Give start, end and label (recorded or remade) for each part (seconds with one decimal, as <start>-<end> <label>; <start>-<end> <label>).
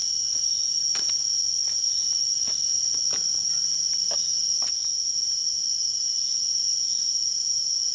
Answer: 0.0-7.9 recorded